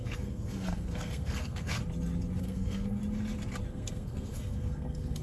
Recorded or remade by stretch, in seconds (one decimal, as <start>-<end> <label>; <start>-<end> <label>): 0.0-1.8 remade; 1.8-2.4 recorded; 2.4-3.0 remade; 3.0-3.7 recorded; 3.7-5.2 remade